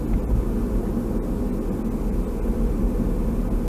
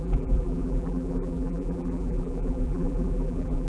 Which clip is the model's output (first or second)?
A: second